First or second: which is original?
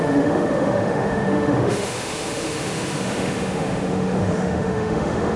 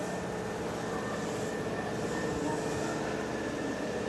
second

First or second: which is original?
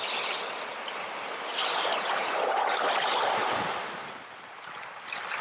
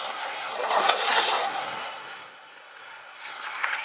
first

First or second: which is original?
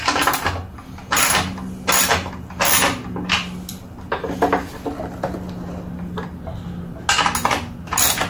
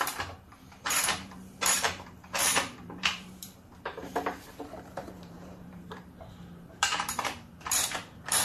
first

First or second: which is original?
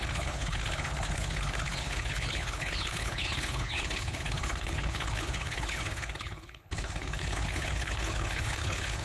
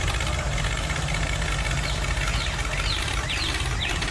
second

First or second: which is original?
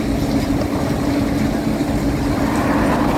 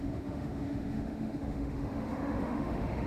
first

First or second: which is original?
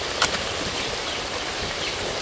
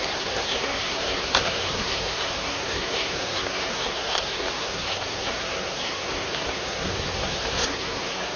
first